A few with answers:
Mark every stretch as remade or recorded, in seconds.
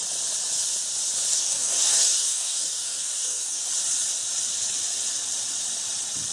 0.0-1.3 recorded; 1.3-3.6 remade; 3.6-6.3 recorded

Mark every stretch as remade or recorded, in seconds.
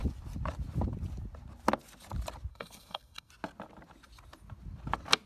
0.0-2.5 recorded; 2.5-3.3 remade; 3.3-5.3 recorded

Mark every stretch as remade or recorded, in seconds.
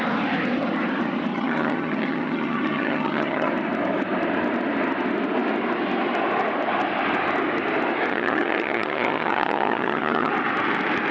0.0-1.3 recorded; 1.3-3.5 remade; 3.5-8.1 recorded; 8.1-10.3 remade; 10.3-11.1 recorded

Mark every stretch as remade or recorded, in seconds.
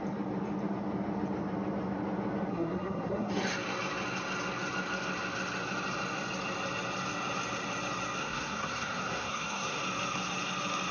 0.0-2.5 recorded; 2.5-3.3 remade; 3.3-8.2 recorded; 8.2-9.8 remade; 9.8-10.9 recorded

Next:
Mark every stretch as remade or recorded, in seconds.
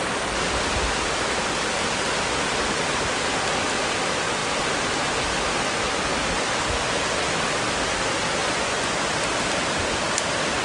0.0-8.4 recorded; 8.4-9.1 remade; 9.1-10.6 recorded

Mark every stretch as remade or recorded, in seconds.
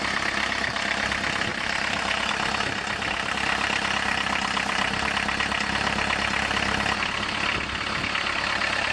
0.0-1.5 recorded; 1.5-2.3 remade; 2.3-8.9 recorded